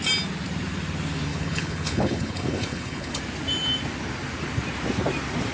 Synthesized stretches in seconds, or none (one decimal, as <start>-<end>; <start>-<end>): 1.3-3.2